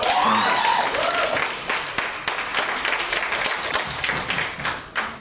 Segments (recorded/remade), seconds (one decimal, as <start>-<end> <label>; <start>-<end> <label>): 0.0-5.2 recorded